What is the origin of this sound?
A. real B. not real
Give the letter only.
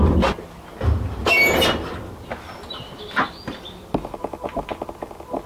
A